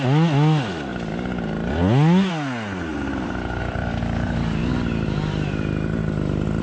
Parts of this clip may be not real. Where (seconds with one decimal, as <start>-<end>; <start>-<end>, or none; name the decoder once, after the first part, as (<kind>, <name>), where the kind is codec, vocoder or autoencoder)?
2.9-4.6 (vocoder, BigVGAN v2)